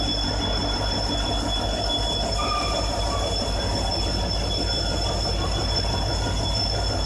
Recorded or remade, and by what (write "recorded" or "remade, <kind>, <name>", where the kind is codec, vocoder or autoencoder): recorded